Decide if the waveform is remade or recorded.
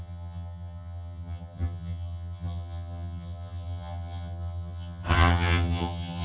remade